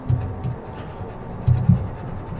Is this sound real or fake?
real